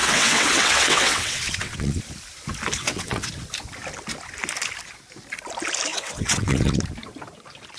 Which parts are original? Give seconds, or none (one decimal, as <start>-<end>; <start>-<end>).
2.0-2.8; 3.3-5.9; 6.8-7.8